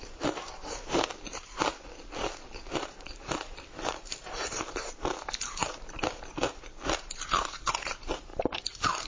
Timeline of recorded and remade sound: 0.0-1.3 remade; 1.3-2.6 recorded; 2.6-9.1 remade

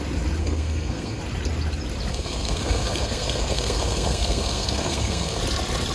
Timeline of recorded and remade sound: 0.0-0.4 recorded; 0.4-1.2 remade; 1.2-2.1 recorded; 2.1-5.4 remade; 5.4-5.9 recorded